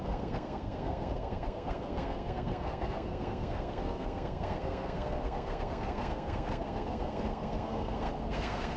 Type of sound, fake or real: fake